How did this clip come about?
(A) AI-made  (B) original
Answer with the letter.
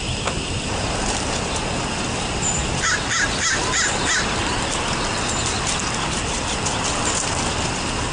B